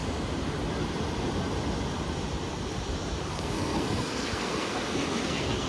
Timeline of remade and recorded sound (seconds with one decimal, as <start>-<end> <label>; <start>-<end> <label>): 0.0-3.2 recorded; 3.2-5.7 remade